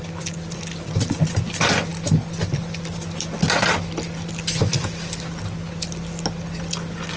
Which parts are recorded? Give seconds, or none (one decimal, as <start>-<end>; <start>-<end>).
0.0-7.2